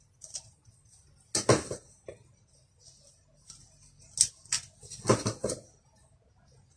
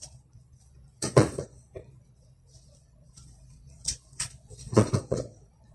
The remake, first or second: second